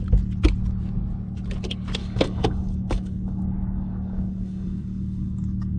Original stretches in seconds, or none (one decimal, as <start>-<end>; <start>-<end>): 0.0-2.0